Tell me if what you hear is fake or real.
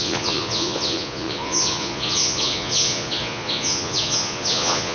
fake